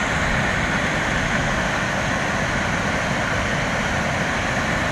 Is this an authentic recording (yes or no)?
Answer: yes